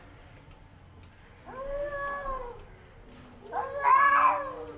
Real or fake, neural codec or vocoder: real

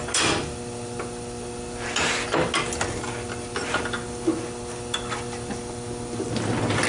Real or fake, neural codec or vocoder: real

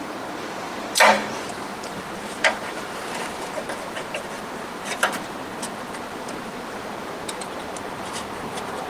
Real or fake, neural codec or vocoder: fake, vocoder, BigVGAN v2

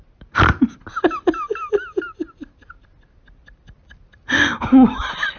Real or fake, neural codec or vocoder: real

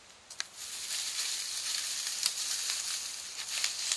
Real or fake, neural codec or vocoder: real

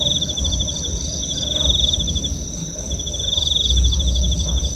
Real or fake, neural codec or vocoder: fake, vocoder, BigVGAN v2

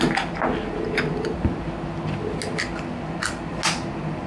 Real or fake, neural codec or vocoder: real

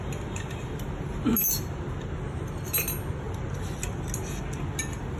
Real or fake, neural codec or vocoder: real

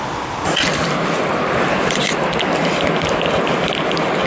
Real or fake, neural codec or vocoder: real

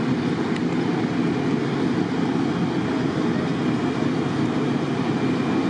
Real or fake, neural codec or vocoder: real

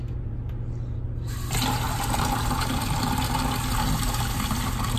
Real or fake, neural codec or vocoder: real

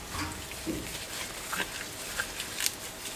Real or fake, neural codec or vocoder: real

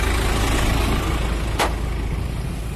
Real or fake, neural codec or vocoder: real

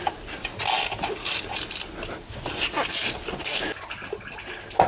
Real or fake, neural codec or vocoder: real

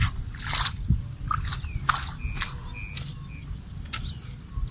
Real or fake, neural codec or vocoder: real